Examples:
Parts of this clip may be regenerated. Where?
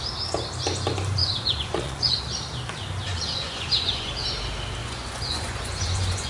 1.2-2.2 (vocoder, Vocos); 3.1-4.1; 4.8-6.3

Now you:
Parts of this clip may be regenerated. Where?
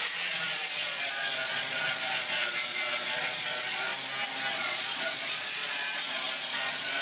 0.0-3.9 (vocoder, Vocos); 4.5-7.0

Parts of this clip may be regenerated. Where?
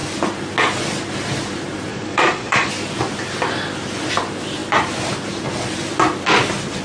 1.9-2.7 (vocoder, Vocos)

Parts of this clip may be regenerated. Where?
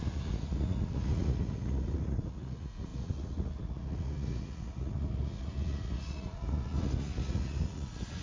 0.0-8.2 (vocoder, Vocos)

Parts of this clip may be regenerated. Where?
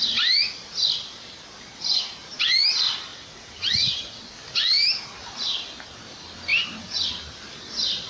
1.7-2.2 (vocoder, Vocos); 3.1-4.2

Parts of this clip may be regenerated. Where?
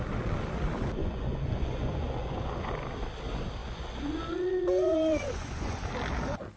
1.0-2.7 (vocoder, Vocos); 3.6-5.8